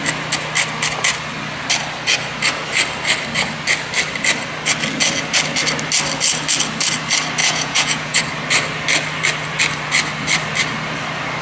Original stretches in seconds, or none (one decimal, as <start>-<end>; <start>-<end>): 0.0-7.4; 8.2-11.4